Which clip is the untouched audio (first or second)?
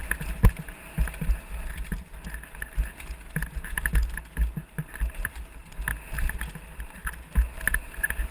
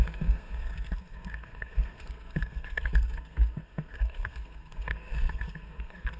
first